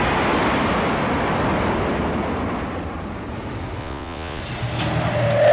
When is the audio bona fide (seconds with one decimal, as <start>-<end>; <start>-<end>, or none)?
0.0-3.8; 4.4-5.5